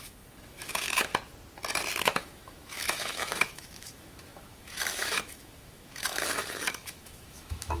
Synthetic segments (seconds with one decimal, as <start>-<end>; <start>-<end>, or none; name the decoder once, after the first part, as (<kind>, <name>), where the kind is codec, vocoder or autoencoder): 0.0-1.1 (autoencoder, DAC-VAE); 2.0-7.8